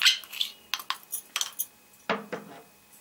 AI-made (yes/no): no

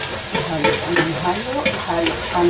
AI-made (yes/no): no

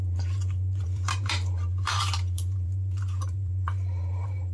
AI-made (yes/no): yes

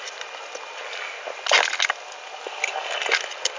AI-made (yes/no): no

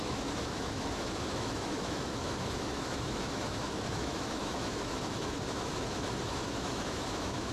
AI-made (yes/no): yes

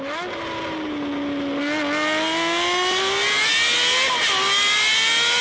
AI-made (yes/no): no